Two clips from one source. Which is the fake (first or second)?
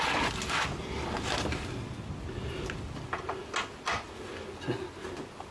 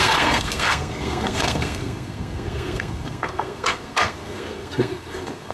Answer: second